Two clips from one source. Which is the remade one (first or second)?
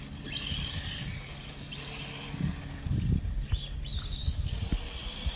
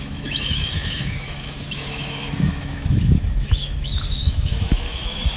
second